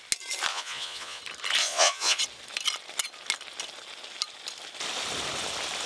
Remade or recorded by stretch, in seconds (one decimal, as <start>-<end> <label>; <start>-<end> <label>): 0.0-0.5 recorded; 0.5-1.2 remade; 1.2-1.6 recorded; 1.6-2.2 remade; 2.2-5.9 recorded